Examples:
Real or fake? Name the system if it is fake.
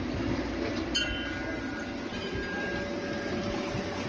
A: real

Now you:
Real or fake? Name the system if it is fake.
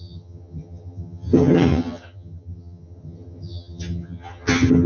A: fake, vocoder, HiFi-GAN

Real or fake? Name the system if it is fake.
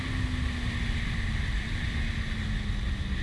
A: real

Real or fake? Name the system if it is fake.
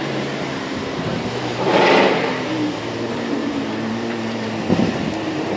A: fake, vocoder, BigVGAN v2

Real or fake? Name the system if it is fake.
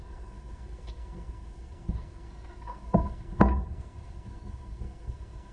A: fake, codec, SNAC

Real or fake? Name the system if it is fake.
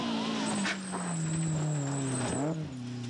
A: real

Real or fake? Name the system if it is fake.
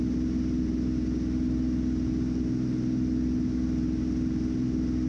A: real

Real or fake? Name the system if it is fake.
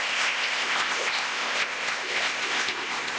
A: fake, codec, ZipCodec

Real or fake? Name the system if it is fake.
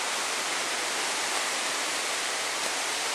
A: real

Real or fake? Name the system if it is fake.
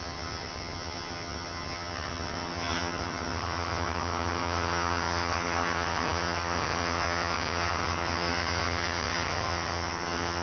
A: fake, vocoder, HiFi-GAN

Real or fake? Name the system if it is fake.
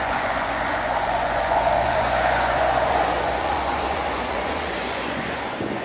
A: fake, vocoder, Vocos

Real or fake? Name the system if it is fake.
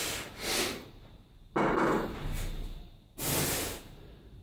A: real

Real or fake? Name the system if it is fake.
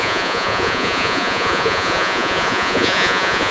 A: fake, vocoder, Vocos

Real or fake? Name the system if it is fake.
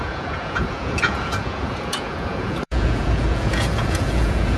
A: fake, vocoder, Vocos